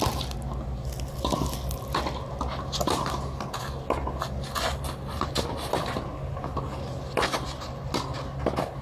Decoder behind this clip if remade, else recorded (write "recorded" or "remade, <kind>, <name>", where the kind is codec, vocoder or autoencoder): recorded